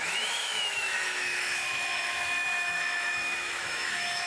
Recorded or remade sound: remade